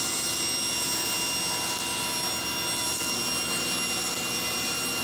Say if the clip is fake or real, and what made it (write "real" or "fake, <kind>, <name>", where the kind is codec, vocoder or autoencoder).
real